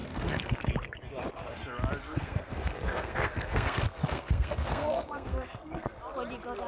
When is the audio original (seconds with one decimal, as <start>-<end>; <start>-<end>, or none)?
0.7-2.0; 6.0-6.7

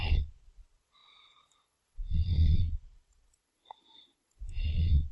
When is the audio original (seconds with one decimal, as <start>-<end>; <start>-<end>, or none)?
none

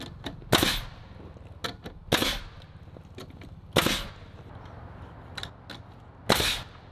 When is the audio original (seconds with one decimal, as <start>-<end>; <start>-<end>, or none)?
0.0-6.9

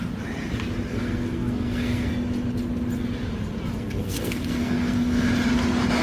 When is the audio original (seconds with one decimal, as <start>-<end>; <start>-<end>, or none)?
0.0-0.9; 2.1-3.7; 5.3-6.0

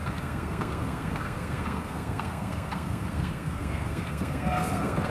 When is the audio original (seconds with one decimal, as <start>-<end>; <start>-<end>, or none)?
none